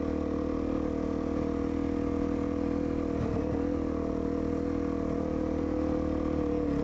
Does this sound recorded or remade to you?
recorded